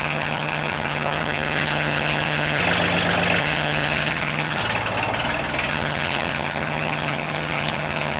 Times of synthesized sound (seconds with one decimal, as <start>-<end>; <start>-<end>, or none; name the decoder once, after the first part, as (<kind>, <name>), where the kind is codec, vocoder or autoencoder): 0.0-2.6 (vocoder, HiFi-GAN); 3.4-4.6; 5.7-8.2